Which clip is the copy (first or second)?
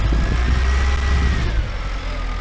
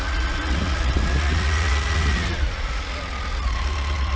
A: second